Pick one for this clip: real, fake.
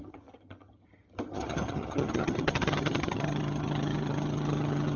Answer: fake